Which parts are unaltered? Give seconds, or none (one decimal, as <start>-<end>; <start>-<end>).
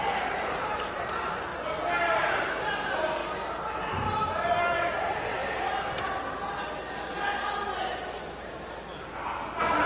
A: 1.5-2.3; 3.2-3.8; 5.4-9.9